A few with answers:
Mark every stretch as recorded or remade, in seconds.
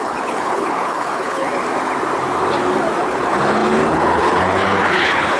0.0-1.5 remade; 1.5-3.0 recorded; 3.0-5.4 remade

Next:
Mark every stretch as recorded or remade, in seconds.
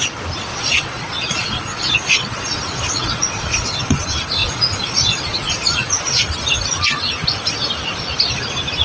0.0-0.5 recorded; 0.5-3.8 remade; 3.8-4.4 recorded; 4.4-6.2 remade; 6.2-8.8 recorded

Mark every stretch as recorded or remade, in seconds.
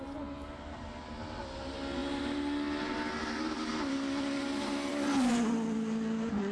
0.0-6.5 recorded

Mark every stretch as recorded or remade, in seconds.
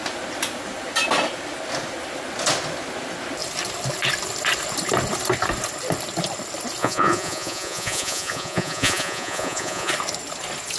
0.0-6.8 recorded; 6.8-9.9 remade; 9.9-10.8 recorded